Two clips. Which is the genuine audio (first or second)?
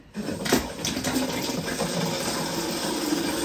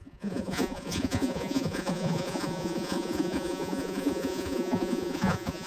first